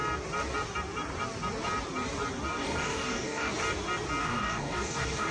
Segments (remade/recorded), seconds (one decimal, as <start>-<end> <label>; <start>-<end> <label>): 0.0-2.6 recorded; 2.6-3.5 remade; 3.5-4.2 recorded; 4.2-5.3 remade